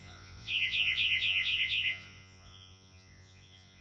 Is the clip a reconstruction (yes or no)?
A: yes